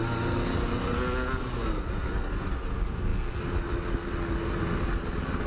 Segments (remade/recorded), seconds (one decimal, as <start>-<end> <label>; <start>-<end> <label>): 0.0-5.5 recorded